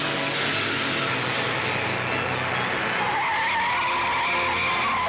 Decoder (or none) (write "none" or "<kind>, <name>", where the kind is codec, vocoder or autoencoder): none